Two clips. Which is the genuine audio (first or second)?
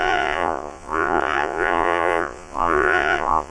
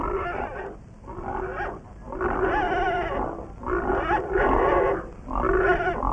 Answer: second